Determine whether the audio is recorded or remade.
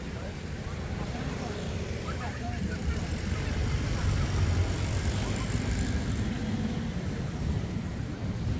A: remade